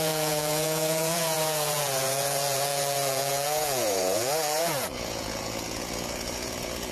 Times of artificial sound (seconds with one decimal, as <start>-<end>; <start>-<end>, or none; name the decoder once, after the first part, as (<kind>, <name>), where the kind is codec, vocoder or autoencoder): 0.0-6.9 (vocoder, Vocos)